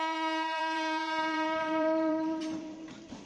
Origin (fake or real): fake